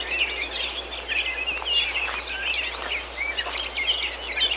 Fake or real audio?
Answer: real